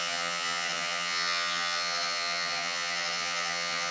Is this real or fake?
fake